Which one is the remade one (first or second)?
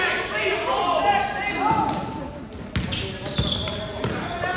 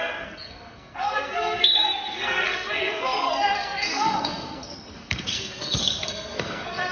second